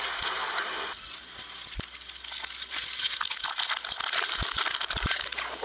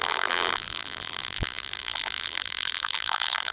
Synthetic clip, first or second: second